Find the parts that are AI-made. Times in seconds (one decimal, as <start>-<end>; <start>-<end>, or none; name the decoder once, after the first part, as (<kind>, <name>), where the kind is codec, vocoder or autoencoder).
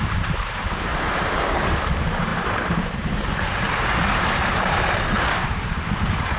0.0-0.9 (vocoder, BigVGAN v2); 1.5-6.4